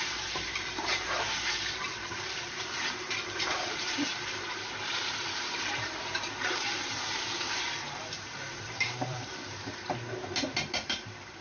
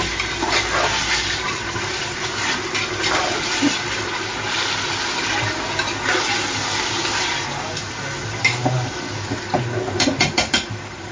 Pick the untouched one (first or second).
second